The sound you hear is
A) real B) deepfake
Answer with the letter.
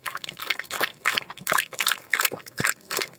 B